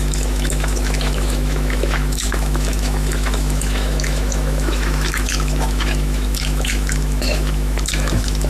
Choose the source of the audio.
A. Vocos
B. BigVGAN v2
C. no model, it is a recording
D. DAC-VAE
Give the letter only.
D